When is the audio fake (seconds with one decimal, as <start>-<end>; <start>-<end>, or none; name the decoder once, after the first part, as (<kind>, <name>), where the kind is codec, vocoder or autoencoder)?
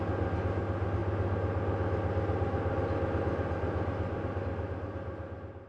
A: none